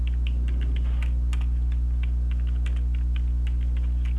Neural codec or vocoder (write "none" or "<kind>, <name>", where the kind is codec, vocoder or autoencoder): none